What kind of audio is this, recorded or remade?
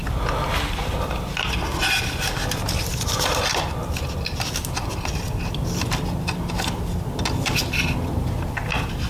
recorded